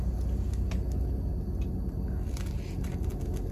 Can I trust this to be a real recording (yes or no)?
yes